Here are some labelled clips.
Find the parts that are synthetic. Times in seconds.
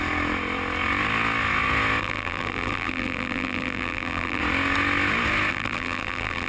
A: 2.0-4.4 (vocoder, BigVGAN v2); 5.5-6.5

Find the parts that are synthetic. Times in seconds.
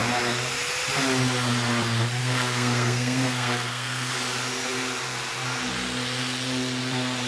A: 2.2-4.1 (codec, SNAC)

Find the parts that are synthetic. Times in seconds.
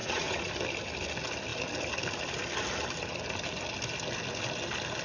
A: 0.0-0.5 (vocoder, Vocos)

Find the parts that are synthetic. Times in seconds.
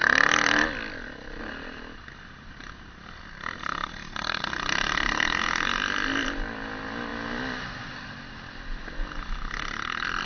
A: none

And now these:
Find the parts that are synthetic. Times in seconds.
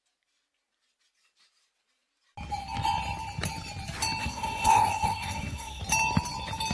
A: 4.2-5.8 (codec, SNAC)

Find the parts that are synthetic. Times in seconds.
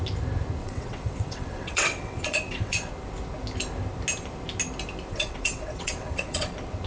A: 0.6-2.9 (vocoder, WaveNeXt); 5.1-6.5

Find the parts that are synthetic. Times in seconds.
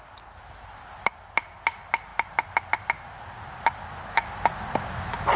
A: none